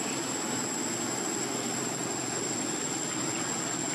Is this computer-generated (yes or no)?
no